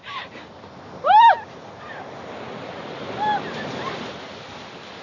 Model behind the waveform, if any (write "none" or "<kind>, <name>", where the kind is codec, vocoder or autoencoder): none